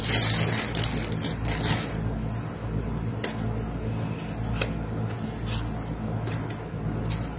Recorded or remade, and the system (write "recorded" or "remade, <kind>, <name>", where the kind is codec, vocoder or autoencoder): recorded